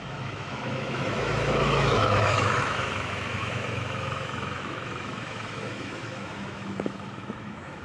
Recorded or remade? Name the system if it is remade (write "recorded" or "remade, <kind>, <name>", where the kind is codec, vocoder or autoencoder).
remade, autoencoder, DAC-VAE